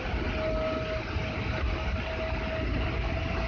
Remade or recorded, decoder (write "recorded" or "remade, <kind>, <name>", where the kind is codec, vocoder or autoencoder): recorded